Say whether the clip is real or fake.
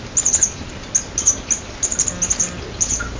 real